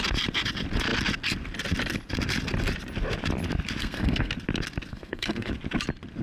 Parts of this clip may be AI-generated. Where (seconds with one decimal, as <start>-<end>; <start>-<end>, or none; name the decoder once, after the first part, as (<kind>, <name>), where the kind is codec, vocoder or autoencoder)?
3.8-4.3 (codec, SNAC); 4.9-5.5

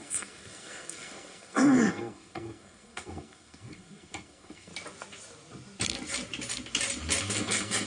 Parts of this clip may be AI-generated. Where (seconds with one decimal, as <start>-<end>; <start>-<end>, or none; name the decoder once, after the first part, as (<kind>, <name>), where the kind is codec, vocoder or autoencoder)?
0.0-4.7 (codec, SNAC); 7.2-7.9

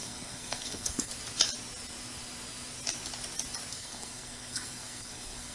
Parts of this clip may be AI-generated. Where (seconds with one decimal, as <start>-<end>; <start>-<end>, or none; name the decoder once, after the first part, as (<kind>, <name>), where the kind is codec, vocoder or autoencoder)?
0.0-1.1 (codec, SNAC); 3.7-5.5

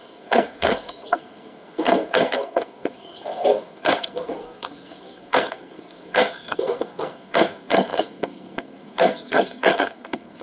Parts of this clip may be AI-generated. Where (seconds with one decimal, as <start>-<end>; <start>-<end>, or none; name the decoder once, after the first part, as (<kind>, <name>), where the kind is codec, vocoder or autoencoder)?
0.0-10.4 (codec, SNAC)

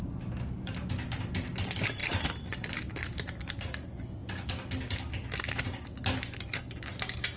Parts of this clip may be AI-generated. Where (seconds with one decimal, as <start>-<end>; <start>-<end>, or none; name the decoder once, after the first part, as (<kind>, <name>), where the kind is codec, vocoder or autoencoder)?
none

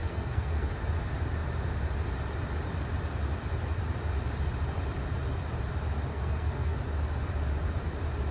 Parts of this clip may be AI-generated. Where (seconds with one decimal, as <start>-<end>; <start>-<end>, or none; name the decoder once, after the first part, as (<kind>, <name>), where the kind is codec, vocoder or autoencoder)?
0.0-0.7 (codec, SNAC); 6.1-6.8

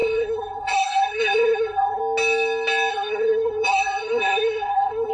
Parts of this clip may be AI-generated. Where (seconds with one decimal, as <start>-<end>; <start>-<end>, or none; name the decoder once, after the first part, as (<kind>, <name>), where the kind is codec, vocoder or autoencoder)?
0.0-2.0 (codec, SNAC); 2.9-5.1

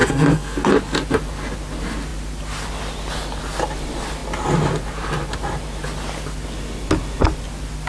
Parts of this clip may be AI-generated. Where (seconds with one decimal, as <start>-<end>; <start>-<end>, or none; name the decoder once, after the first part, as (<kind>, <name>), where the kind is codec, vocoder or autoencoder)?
0.0-0.7 (codec, SNAC)